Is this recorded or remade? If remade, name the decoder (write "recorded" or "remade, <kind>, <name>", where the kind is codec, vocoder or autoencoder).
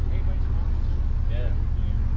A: recorded